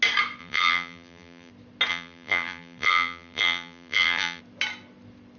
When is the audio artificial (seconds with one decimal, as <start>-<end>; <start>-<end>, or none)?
0.4-1.5; 1.9-4.4